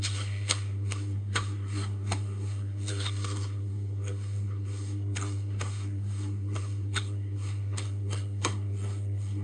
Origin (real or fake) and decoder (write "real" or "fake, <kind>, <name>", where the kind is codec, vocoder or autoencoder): fake, codec, SNAC